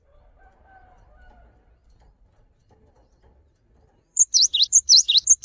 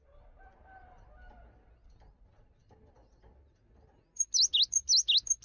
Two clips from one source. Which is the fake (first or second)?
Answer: first